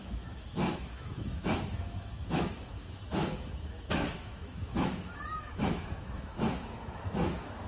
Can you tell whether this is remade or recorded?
remade